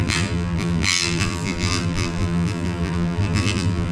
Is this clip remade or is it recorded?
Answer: remade